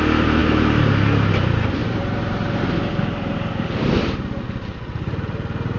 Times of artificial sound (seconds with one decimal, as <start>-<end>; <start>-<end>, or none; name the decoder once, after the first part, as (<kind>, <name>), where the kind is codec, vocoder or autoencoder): 0.4-1.3 (vocoder, BigVGAN v2); 1.8-2.9